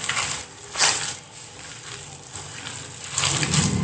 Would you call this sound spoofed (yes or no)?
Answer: yes